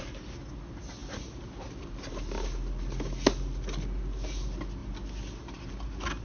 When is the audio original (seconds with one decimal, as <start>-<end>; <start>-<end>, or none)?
0.0-6.2